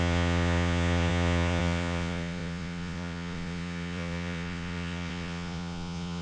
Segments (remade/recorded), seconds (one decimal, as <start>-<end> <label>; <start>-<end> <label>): 0.0-6.2 remade

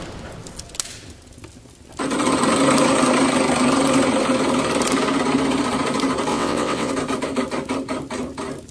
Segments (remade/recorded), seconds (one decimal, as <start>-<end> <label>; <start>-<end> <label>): 0.0-6.3 recorded; 6.3-6.9 remade; 6.9-8.7 recorded

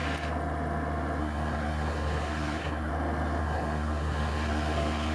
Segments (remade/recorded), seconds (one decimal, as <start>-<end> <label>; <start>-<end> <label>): 0.0-1.2 recorded; 1.2-2.9 remade; 2.9-3.4 recorded; 3.4-5.1 remade